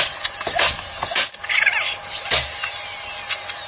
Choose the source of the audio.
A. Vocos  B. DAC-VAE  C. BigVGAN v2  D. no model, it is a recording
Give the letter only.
D